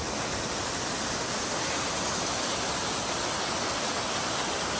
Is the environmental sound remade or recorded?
recorded